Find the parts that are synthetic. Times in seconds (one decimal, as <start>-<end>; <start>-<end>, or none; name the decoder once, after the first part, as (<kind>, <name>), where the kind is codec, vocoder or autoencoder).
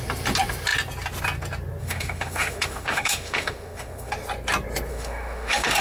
1.8-4.1 (autoencoder, DAC-VAE); 4.9-5.8